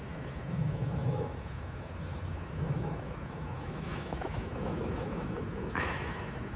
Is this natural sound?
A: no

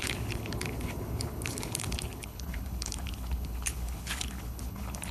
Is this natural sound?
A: no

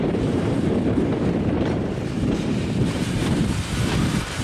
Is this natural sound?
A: no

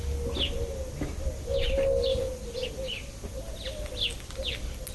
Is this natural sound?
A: yes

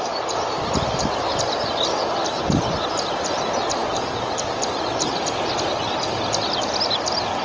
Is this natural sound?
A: yes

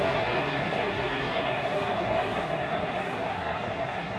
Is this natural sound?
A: no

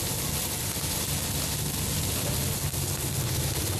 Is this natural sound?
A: yes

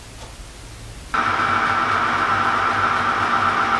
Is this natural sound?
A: yes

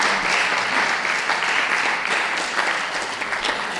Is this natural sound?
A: yes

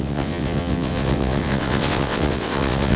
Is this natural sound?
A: no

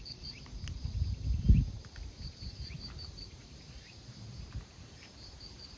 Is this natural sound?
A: no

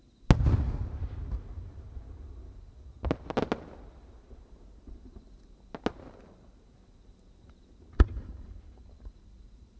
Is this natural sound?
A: yes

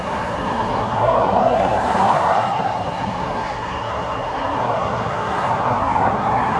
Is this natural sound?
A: no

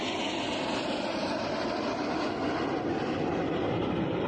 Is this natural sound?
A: yes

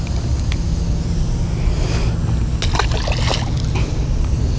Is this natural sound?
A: yes